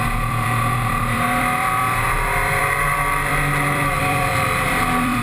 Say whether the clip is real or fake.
fake